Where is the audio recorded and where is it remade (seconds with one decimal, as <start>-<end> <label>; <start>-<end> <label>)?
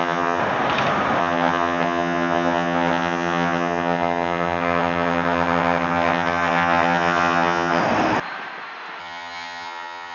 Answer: 0.0-0.4 remade; 0.4-1.2 recorded; 1.2-7.8 remade; 7.8-9.0 recorded; 9.0-10.1 remade